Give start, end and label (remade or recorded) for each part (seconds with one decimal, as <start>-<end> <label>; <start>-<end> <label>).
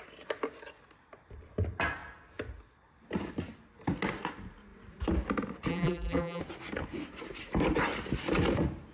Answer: 0.0-5.7 recorded; 5.7-6.4 remade; 6.4-8.9 recorded